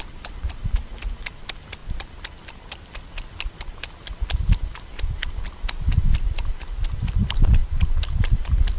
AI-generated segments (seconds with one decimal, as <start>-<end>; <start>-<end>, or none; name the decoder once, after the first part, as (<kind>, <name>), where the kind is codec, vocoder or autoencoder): 7.6-8.3 (vocoder, BigVGAN v2)